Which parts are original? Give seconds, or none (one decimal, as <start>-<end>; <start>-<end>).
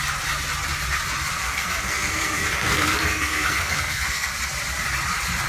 0.0-1.3; 4.3-5.5